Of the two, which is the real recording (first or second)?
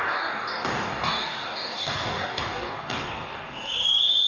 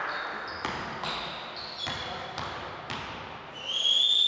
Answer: second